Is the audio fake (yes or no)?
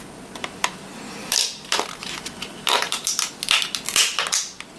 no